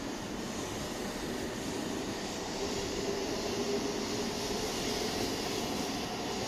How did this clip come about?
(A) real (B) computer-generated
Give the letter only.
A